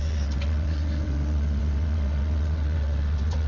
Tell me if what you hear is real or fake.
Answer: fake